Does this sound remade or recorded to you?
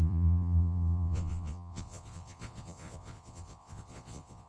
remade